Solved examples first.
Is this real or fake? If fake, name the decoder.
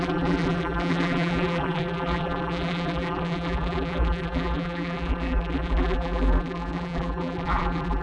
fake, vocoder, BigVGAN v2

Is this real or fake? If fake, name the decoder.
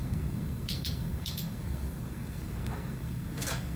fake, codec, SNAC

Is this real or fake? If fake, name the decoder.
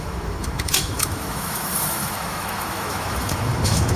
fake, autoencoder, DAC-VAE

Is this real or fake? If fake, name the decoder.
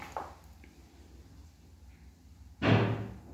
real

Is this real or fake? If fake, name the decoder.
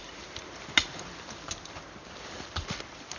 real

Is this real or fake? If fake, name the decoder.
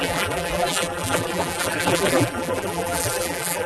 fake, vocoder, BigVGAN v2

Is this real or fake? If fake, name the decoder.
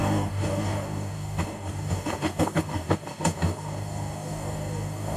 fake, codec, DAC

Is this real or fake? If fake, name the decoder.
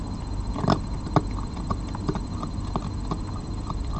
real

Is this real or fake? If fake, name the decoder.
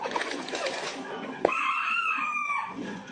fake, vocoder, Vocos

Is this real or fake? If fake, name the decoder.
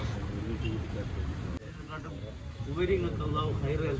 real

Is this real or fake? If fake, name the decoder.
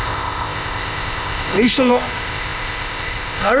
fake, codec, ZipCodec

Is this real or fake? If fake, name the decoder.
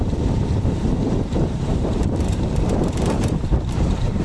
fake, vocoder, BigVGAN v2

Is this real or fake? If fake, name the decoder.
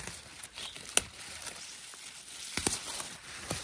real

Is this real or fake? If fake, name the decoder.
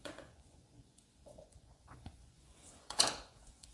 fake, vocoder, Vocos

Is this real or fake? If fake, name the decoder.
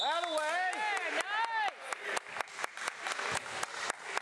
real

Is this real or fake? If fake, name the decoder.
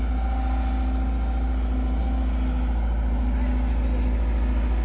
real